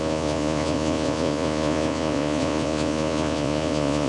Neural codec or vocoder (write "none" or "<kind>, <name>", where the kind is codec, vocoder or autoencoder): vocoder, Vocos